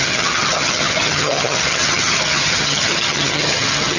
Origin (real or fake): fake